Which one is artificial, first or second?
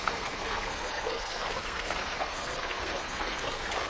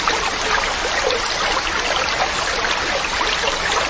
first